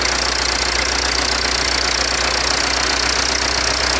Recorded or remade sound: recorded